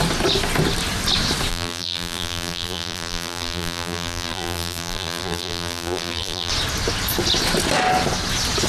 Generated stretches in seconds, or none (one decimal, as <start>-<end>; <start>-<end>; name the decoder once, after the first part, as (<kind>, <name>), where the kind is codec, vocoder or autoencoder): 1.5-6.5 (vocoder, BigVGAN v2)

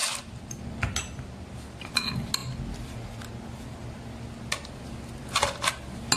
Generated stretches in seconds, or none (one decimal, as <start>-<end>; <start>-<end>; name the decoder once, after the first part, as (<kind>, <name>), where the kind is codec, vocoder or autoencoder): 0.0-0.6 (vocoder, BigVGAN v2)